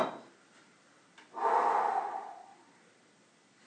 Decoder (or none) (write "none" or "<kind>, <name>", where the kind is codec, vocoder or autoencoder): vocoder, BigVGAN v2